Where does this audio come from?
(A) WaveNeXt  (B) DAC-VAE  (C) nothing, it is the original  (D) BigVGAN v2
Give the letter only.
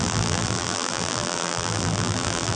D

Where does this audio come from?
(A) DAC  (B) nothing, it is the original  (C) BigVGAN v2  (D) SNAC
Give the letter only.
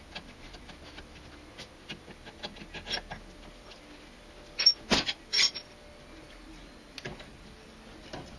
B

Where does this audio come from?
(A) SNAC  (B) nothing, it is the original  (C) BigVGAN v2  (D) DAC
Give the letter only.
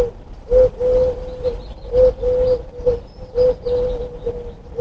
B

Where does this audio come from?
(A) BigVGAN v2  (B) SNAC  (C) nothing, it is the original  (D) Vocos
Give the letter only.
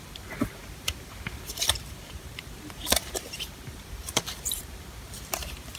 A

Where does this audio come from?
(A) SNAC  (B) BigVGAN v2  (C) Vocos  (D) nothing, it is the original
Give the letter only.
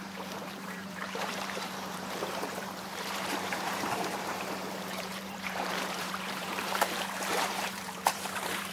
B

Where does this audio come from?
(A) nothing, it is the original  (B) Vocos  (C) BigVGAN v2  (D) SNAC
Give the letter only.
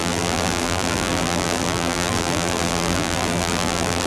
C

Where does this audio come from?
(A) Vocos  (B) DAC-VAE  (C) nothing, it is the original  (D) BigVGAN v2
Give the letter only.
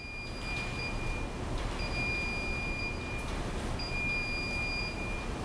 C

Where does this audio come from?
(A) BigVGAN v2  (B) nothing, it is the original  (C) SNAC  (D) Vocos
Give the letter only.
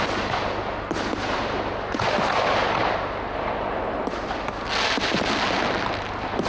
B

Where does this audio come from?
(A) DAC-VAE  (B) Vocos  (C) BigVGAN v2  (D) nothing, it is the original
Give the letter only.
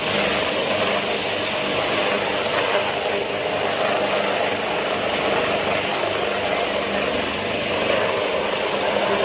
D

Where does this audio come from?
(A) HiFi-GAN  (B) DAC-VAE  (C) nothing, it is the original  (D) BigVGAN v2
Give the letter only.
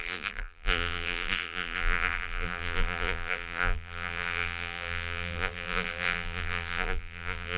D